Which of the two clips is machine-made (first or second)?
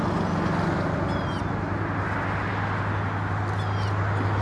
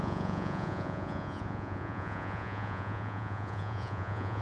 second